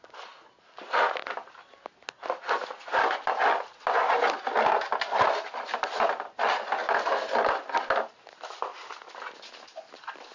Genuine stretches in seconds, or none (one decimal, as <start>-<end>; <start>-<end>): 0.0-10.3